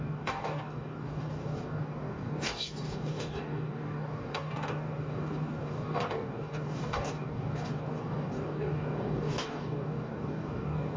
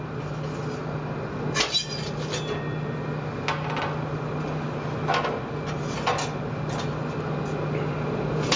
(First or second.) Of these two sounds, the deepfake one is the first